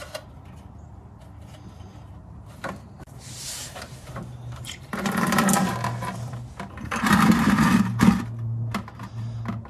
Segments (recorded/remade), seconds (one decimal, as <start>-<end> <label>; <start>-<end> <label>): 0.0-1.9 recorded; 1.9-7.1 remade; 7.1-9.7 recorded